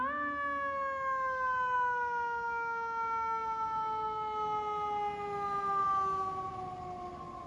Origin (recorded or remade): recorded